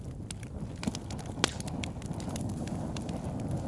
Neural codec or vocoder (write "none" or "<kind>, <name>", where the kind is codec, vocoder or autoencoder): none